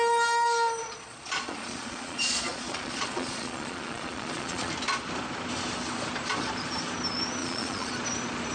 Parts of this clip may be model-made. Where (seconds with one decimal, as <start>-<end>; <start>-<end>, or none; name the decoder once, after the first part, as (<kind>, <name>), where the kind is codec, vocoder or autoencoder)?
0.8-4.7 (vocoder, Vocos); 7.4-7.9